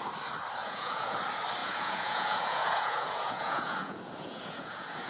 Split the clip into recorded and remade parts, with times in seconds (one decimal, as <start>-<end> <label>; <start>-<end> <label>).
0.0-0.6 recorded; 0.6-1.1 remade; 1.1-1.6 recorded; 1.6-5.1 remade